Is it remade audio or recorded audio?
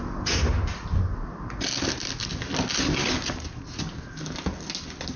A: recorded